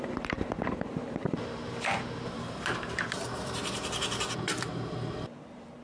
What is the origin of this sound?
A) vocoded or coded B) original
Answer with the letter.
A